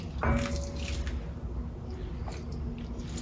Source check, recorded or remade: recorded